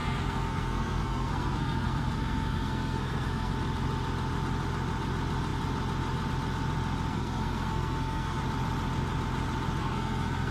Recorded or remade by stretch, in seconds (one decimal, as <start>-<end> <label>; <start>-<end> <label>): 0.0-3.5 remade; 3.5-7.1 recorded; 7.1-8.4 remade; 8.4-9.8 recorded; 9.8-10.5 remade